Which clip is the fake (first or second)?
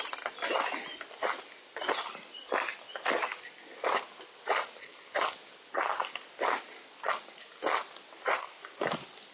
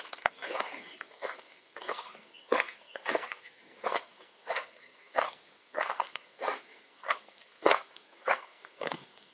second